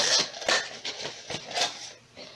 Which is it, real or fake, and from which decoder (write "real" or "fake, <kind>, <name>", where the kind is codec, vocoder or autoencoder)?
real